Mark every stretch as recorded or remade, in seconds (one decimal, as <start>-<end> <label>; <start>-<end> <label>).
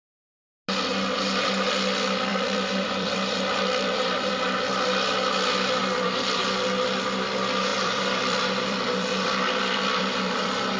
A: 0.0-2.3 recorded; 2.3-4.7 remade; 4.7-5.8 recorded; 5.8-6.4 remade; 6.4-7.7 recorded; 7.7-10.8 remade